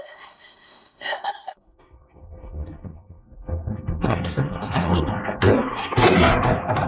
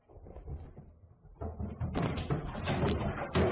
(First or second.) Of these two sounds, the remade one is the first